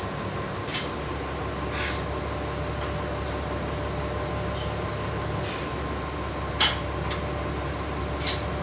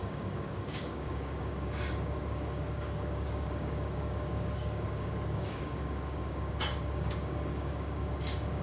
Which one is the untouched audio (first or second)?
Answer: first